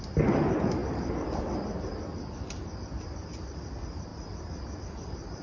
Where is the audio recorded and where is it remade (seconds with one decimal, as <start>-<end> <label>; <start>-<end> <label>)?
0.0-2.1 recorded; 2.1-2.7 remade; 2.7-5.4 recorded

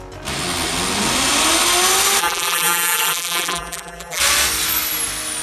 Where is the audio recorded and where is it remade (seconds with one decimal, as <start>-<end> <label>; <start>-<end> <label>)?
0.0-2.2 recorded; 2.2-4.2 remade; 4.2-5.4 recorded

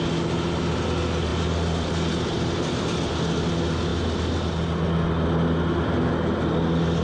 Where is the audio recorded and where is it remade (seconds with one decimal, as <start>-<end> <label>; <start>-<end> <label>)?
0.0-1.3 recorded; 1.3-3.5 remade; 3.5-7.0 recorded

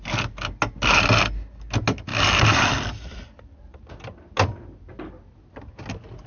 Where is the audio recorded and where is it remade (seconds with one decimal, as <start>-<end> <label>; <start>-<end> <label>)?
0.0-2.1 recorded; 2.1-3.8 remade; 3.8-6.3 recorded

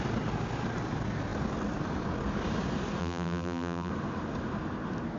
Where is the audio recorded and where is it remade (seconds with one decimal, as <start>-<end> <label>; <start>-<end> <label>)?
0.0-3.0 recorded; 3.0-3.9 remade; 3.9-5.2 recorded

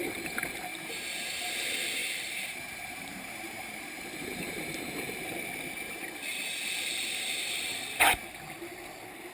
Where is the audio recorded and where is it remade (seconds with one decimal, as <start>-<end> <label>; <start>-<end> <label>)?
0.0-0.7 recorded; 0.7-1.4 remade; 1.4-2.0 recorded; 2.0-4.8 remade; 4.8-9.3 recorded

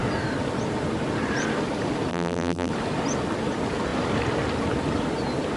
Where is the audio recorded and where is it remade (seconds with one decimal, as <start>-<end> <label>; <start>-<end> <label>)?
0.0-2.1 recorded; 2.1-2.7 remade; 2.7-5.6 recorded